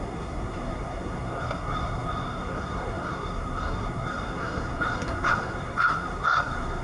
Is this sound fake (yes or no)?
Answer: yes